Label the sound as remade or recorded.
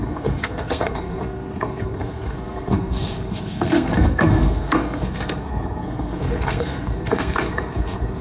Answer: remade